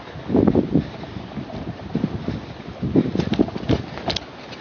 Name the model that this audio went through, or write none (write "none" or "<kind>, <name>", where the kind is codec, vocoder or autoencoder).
none